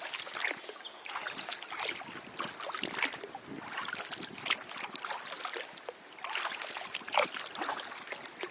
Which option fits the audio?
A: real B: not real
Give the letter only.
A